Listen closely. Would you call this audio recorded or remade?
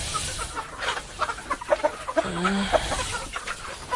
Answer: recorded